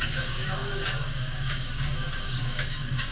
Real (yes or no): no